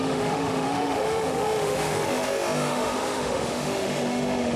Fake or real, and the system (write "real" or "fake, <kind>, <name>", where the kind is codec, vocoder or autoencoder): fake, autoencoder, DAC-VAE